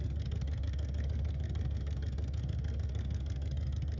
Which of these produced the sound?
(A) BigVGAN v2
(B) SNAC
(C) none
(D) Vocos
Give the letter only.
B